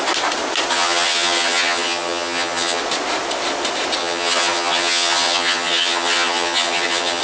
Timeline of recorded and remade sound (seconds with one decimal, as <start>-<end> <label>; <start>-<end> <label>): 0.0-0.7 recorded; 0.7-2.8 remade; 2.8-4.0 recorded; 4.0-7.2 remade